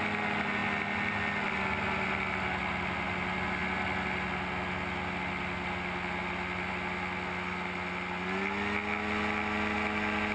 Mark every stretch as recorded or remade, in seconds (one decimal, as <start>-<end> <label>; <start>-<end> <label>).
0.0-10.3 recorded